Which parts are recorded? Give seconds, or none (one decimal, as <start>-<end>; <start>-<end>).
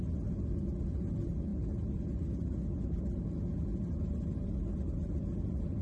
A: 0.0-5.8